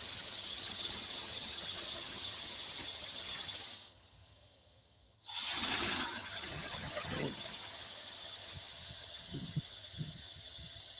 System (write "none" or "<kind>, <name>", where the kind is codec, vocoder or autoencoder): vocoder, HiFi-GAN